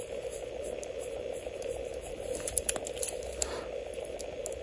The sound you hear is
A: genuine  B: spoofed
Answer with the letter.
A